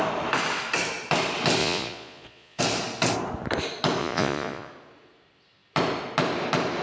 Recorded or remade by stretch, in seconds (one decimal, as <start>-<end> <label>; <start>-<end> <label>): 0.0-1.6 recorded; 1.6-2.6 remade; 2.6-4.0 recorded; 4.0-4.7 remade; 4.7-6.8 recorded